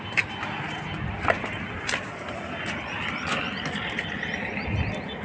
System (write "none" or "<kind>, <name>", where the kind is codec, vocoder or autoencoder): none